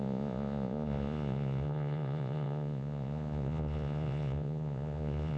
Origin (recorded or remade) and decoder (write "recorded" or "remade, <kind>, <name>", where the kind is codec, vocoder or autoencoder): remade, vocoder, Vocos